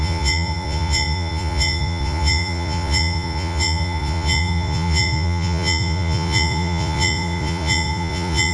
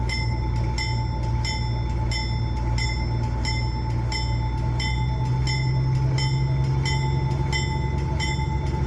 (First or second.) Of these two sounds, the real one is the second